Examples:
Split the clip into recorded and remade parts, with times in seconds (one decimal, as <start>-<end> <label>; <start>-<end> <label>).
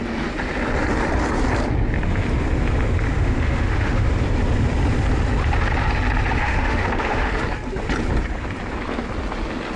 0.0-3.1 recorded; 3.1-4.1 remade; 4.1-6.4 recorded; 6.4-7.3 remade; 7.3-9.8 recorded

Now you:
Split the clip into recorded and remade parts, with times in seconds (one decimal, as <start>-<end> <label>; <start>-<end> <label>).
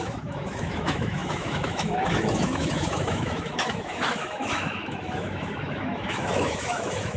0.0-7.2 remade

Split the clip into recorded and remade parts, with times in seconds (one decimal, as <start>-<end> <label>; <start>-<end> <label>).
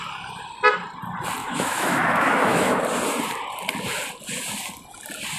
0.0-1.4 recorded; 1.4-2.8 remade; 2.8-5.4 recorded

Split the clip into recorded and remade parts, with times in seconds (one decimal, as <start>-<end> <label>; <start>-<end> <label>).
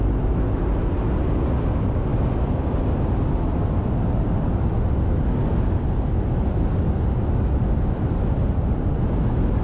0.0-9.6 recorded